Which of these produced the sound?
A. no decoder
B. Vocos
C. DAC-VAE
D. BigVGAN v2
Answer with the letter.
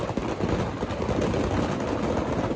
A